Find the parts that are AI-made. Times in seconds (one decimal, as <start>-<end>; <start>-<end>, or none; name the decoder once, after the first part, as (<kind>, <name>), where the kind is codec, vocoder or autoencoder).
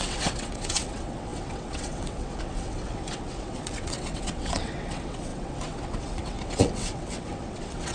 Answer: 0.0-7.9 (vocoder, WaveNeXt)